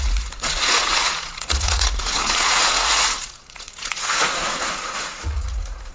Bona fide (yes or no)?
no